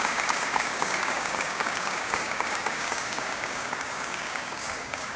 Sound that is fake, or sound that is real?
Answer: fake